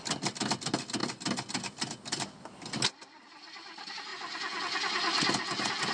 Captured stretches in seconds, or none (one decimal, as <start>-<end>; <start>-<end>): 0.0-5.9